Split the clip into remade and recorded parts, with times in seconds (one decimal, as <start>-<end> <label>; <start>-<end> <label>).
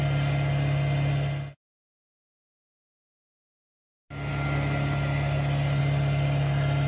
0.0-6.9 recorded